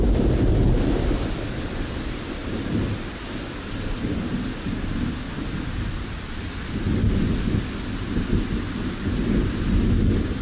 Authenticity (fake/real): real